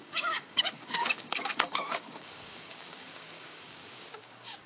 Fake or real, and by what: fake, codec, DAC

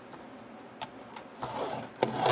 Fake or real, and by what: real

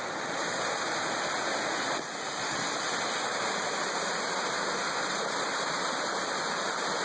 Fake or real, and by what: real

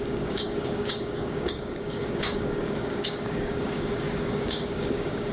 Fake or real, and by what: fake, codec, DAC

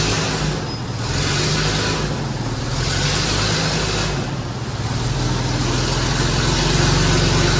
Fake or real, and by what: real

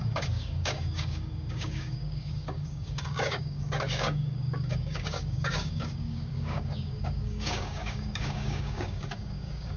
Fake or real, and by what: fake, codec, DAC